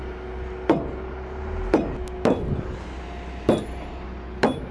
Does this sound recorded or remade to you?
recorded